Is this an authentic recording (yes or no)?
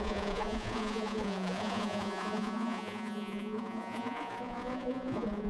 no